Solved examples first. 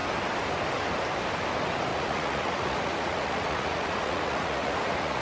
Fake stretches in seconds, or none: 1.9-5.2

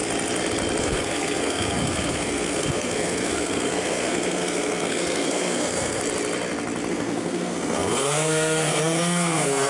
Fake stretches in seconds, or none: 0.8-6.0; 6.9-9.7